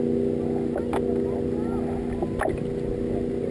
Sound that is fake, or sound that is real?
real